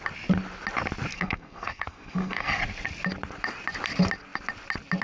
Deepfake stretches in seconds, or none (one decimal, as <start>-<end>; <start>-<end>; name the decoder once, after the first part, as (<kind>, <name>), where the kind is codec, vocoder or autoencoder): 1.1-2.6 (codec, SNAC)